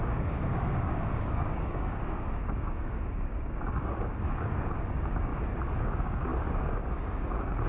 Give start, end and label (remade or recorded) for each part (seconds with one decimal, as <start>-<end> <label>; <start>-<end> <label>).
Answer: 0.0-5.3 remade; 5.3-5.8 recorded; 5.8-7.7 remade